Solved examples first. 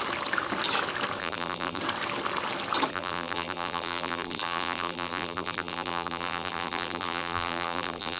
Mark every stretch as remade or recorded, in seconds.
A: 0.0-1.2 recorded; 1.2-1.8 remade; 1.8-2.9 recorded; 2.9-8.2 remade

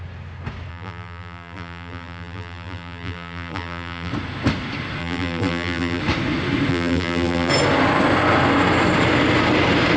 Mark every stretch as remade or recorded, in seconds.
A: 0.0-0.7 recorded; 0.7-4.1 remade; 4.1-5.0 recorded; 5.0-6.0 remade; 6.0-6.7 recorded; 6.7-7.5 remade; 7.5-10.0 recorded

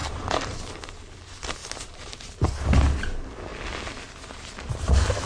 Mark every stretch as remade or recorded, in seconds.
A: 0.0-1.0 remade; 1.0-1.6 recorded; 1.6-2.5 remade; 2.5-3.5 recorded; 3.5-4.0 remade; 4.0-5.3 recorded

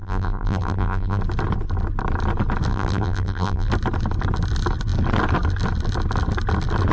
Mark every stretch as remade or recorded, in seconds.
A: 0.0-1.2 remade; 1.2-2.7 recorded; 2.7-3.7 remade; 3.7-6.9 recorded

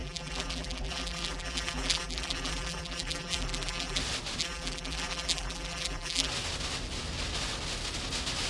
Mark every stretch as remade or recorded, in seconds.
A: 0.0-4.0 remade; 4.0-4.4 recorded; 4.4-6.3 remade; 6.3-8.5 recorded

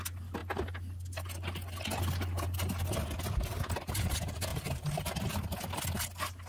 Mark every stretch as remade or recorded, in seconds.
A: 0.0-4.5 recorded; 4.5-5.2 remade; 5.2-6.5 recorded

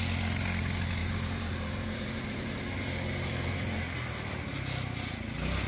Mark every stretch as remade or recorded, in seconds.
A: 0.0-1.0 recorded; 1.0-4.4 remade; 4.4-5.7 recorded

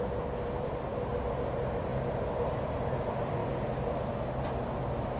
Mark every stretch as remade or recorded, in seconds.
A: 0.0-1.9 remade; 1.9-2.6 recorded; 2.6-3.4 remade; 3.4-5.2 recorded